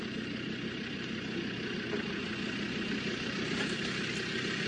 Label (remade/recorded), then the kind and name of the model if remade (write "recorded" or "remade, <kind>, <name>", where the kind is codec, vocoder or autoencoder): remade, vocoder, BigVGAN v2